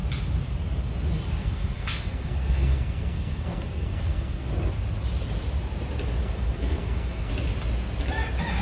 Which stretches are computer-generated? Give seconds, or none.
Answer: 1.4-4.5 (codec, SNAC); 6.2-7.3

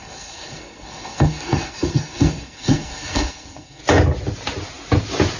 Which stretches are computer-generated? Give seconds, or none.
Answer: 0.0-3.8 (codec, SNAC)